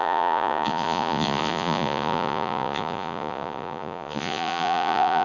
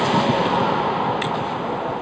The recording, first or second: second